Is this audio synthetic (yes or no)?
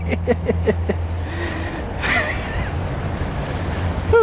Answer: no